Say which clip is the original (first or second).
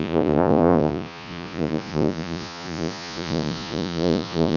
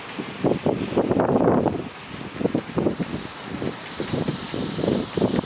second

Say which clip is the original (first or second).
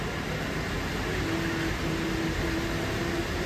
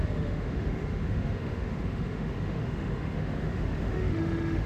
first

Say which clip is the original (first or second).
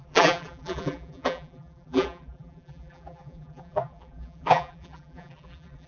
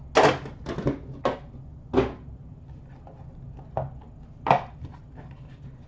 second